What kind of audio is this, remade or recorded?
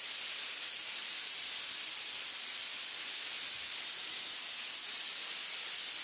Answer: recorded